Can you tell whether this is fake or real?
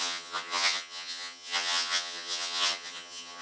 fake